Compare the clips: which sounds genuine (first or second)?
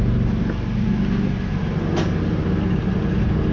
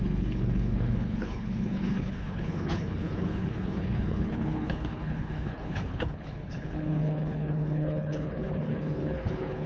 first